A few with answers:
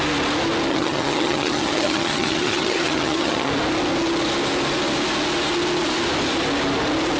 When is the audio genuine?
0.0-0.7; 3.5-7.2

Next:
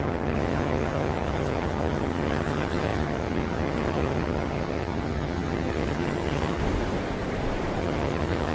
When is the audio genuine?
6.6-7.8